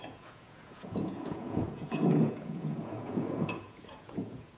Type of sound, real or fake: fake